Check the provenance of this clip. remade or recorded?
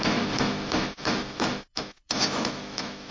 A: remade